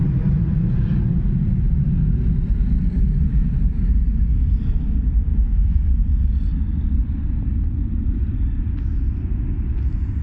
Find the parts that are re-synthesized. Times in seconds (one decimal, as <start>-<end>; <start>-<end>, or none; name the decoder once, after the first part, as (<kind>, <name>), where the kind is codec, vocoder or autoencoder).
5.3-5.9 (codec, SNAC)